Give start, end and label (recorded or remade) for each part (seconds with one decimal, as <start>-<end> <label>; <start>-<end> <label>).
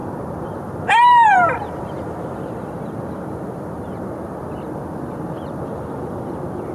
0.0-6.7 remade